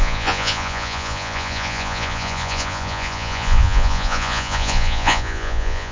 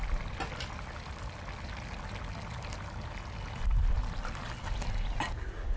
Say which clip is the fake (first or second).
first